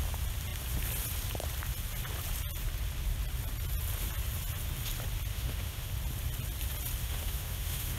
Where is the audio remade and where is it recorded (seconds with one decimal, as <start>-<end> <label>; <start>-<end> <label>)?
0.0-5.3 recorded; 5.3-5.9 remade; 5.9-7.0 recorded; 7.0-8.0 remade